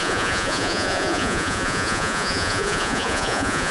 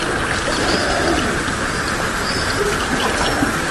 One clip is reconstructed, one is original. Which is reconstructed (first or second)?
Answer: first